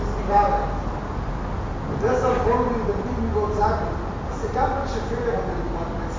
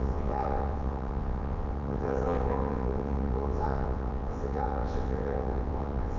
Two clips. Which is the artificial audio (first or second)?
second